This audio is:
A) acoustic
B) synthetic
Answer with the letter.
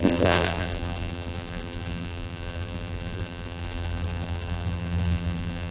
B